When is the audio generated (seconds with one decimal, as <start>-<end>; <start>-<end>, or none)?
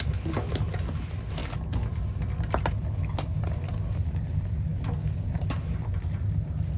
none